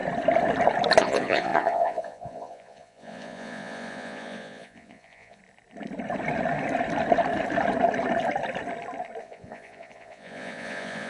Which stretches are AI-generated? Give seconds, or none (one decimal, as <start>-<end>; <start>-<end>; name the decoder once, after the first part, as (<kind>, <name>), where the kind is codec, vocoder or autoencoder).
1.0-5.4 (vocoder, Vocos); 9.2-11.1